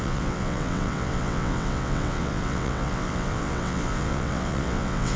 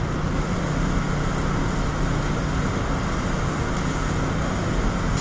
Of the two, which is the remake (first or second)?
first